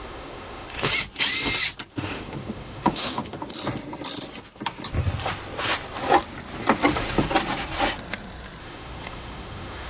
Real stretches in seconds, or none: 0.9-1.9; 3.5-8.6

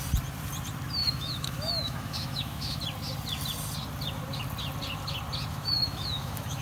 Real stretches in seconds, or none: 0.0-1.0; 2.8-5.5

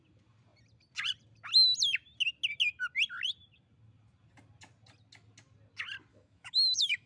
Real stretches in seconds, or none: 0.0-6.1

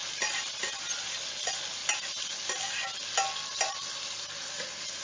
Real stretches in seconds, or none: 0.0-5.0

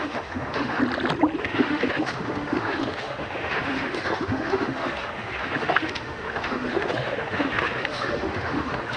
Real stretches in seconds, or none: 0.8-1.4

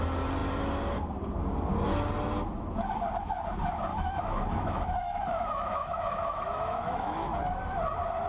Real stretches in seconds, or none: 0.0-3.9; 7.4-8.3

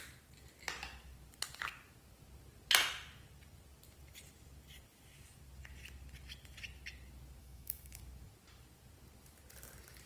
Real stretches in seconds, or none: 0.0-7.4; 8.0-10.1

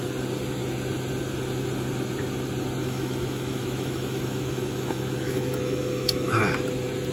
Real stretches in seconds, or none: 0.0-2.8; 6.4-7.1